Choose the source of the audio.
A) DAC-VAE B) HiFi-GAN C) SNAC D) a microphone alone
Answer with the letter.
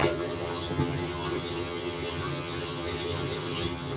B